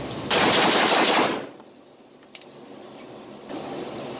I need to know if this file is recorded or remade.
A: recorded